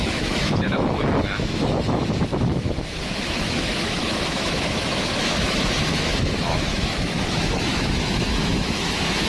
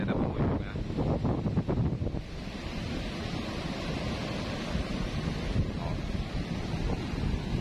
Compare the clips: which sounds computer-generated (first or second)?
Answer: first